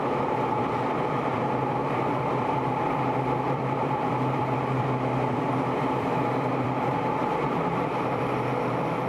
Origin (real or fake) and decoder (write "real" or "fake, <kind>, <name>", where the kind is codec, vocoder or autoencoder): fake, vocoder, BigVGAN v2